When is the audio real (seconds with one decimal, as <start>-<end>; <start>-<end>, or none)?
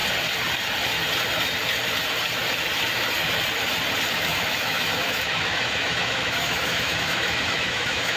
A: 0.0-4.1